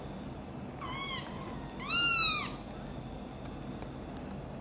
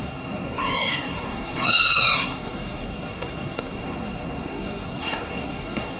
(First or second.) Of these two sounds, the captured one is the first